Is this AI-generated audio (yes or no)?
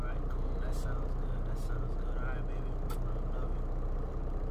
no